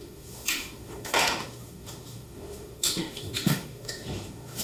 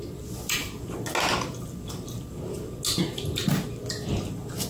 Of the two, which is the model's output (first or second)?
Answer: first